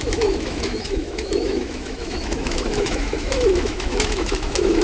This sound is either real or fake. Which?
fake